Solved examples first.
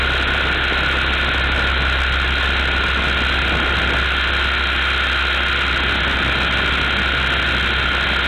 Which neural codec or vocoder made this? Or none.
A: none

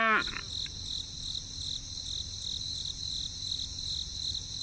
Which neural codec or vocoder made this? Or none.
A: none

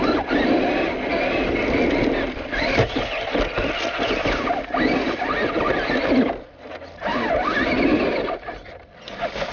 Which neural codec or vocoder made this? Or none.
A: none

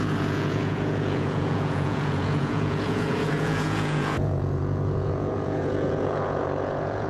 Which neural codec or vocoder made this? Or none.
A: vocoder, Vocos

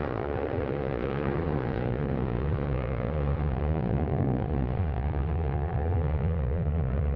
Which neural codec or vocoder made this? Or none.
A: vocoder, Vocos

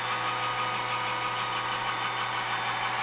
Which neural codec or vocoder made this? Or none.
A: none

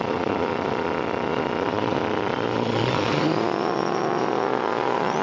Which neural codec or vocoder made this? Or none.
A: vocoder, Vocos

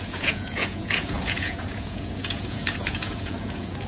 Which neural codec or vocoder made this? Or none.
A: vocoder, Vocos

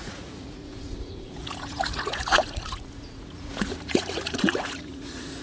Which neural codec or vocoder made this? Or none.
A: vocoder, Vocos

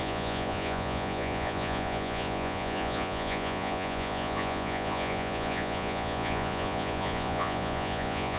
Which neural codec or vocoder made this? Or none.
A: vocoder, Vocos